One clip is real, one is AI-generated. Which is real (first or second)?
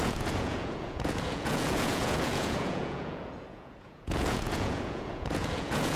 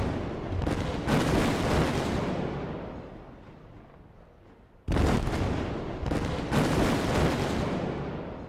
second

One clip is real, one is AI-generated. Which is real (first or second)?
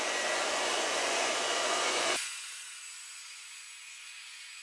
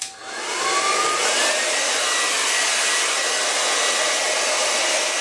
second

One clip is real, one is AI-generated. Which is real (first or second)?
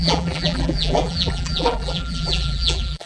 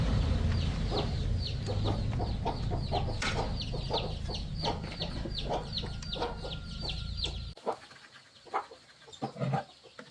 second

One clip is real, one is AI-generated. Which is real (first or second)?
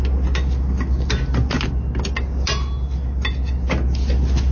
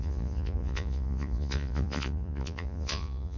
first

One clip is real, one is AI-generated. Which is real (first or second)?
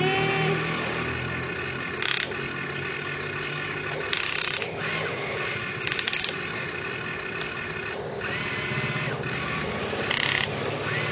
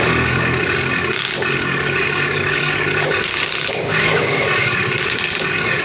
first